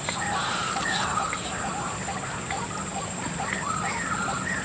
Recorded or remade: recorded